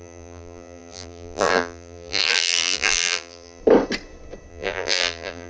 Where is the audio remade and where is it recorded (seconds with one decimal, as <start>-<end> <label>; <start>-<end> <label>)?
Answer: 0.0-3.6 remade; 3.6-4.5 recorded; 4.5-5.5 remade